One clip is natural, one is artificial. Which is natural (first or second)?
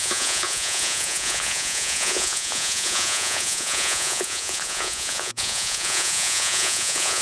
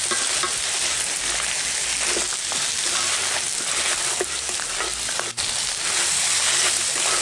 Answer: second